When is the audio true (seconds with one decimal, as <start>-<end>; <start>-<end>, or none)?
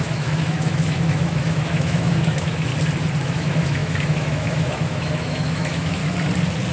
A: 2.7-3.2; 6.0-6.7